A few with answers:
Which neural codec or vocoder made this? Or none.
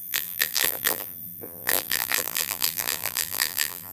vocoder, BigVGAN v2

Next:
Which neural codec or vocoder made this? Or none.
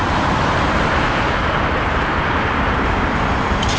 vocoder, BigVGAN v2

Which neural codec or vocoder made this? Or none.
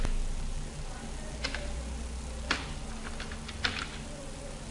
none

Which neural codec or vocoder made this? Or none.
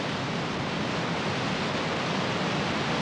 none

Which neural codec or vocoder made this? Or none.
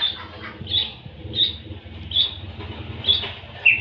none